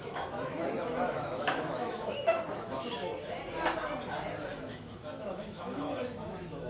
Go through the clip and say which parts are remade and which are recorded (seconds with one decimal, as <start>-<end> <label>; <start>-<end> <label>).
0.0-3.1 remade; 3.1-4.6 recorded; 4.6-6.7 remade

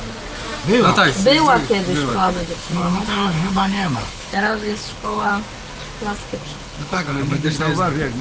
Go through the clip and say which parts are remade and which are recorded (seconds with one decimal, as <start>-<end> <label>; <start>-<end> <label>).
0.0-2.1 recorded; 2.1-5.3 remade; 5.3-6.2 recorded; 6.2-7.6 remade; 7.6-8.2 recorded

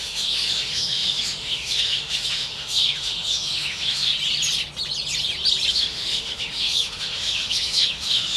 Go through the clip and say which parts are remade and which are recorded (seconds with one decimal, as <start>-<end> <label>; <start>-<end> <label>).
0.0-4.1 remade; 4.1-5.7 recorded; 5.7-8.4 remade

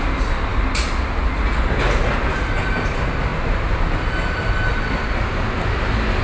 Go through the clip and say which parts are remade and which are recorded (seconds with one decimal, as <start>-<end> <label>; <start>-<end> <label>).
0.0-6.2 recorded

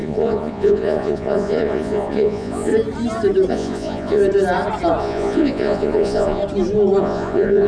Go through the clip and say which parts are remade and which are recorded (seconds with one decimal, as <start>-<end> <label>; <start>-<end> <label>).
0.0-2.7 remade; 2.7-3.5 recorded; 3.5-4.2 remade; 4.2-5.0 recorded; 5.0-6.4 remade; 6.4-7.0 recorded; 7.0-7.7 remade

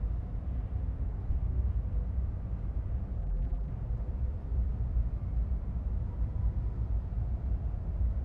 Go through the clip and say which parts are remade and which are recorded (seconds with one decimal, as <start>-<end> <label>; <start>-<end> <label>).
0.0-3.2 recorded; 3.2-3.7 remade; 3.7-8.2 recorded